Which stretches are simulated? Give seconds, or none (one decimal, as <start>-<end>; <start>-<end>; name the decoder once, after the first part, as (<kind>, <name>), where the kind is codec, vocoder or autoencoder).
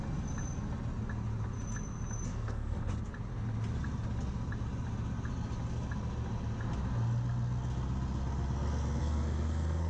2.3-2.9 (codec, SNAC); 9.0-9.9